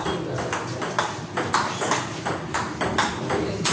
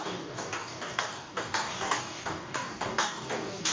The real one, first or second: first